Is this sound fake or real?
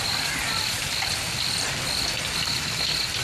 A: real